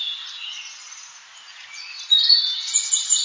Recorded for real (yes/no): yes